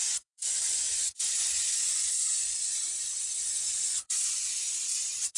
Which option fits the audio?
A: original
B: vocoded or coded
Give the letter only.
B